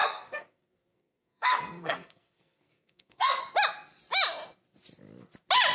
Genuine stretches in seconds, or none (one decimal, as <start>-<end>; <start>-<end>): 3.4-5.7